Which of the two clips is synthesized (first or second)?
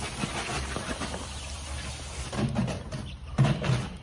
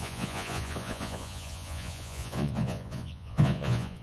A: second